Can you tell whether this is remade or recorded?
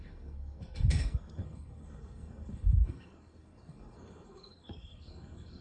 remade